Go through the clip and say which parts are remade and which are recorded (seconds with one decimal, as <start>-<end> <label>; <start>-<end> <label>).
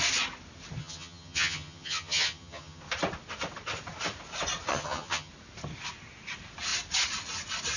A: 0.0-0.8 recorded; 0.8-2.8 remade; 2.8-4.7 recorded; 4.7-5.3 remade; 5.3-7.8 recorded